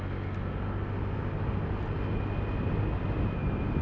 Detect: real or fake real